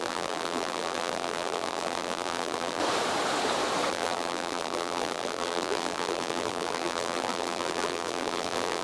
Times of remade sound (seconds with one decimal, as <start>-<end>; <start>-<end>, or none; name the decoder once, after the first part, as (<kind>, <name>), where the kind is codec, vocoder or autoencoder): 0.0-2.8 (vocoder, BigVGAN v2); 3.9-8.8